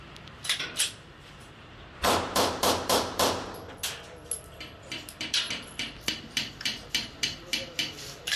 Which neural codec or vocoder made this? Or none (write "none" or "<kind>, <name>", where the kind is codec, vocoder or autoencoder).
vocoder, BigVGAN v2